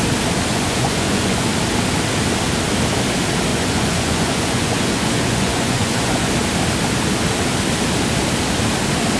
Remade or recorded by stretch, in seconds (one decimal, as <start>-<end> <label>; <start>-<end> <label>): 0.0-0.5 recorded; 0.5-1.5 remade; 1.5-3.5 recorded; 3.5-6.3 remade; 6.3-9.2 recorded